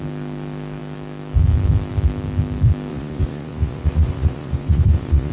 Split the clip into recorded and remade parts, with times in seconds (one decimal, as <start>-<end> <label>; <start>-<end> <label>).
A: 0.0-2.9 recorded; 2.9-5.3 remade